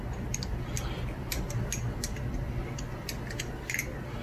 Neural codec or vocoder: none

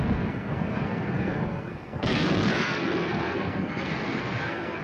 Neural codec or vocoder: codec, SNAC